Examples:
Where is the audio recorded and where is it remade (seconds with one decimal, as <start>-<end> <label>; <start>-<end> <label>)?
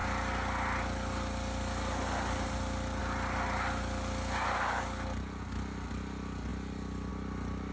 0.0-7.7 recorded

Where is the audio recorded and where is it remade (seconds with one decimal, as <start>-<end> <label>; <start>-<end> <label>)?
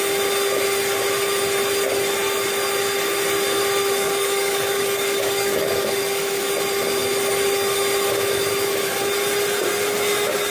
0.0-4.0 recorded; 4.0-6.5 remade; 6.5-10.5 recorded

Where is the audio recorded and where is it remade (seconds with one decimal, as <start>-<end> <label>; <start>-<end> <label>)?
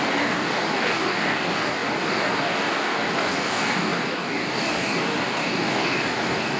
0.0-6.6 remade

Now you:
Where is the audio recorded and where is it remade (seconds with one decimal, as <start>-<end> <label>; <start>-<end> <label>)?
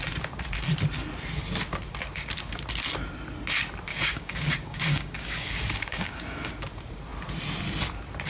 0.0-3.9 recorded; 3.9-6.5 remade; 6.5-8.3 recorded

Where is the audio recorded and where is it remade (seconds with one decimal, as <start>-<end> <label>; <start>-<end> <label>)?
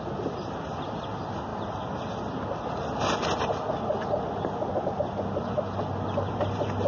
0.0-6.9 recorded